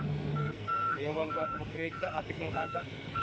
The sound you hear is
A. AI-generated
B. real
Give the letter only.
A